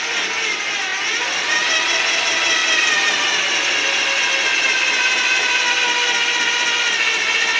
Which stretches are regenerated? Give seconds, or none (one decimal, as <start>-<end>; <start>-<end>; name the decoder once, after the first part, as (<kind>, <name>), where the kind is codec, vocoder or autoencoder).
none